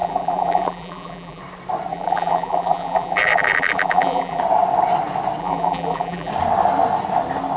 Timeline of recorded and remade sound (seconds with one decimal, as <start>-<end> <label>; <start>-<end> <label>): 0.0-1.4 remade; 1.4-1.9 recorded; 1.9-4.4 remade; 4.4-5.4 recorded; 5.4-6.3 remade; 6.3-7.6 recorded